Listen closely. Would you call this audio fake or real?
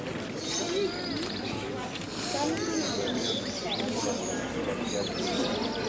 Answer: real